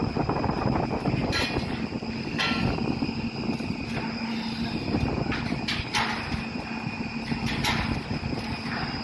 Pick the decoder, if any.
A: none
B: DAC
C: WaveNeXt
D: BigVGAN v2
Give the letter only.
A